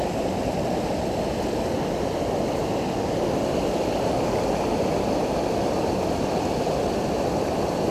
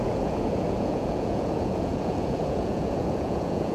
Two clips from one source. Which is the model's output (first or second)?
second